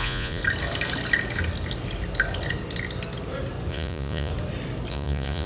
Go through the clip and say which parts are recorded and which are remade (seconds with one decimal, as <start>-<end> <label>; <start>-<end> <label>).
0.0-0.4 remade; 0.4-3.7 recorded; 3.7-4.3 remade; 4.3-4.9 recorded; 4.9-5.5 remade